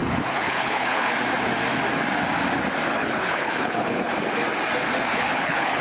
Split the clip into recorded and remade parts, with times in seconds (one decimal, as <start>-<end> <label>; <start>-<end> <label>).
0.0-1.1 remade; 1.1-2.9 recorded; 2.9-4.1 remade; 4.1-5.1 recorded; 5.1-5.8 remade